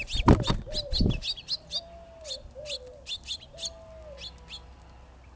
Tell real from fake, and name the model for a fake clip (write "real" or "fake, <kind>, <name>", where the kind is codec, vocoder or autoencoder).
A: real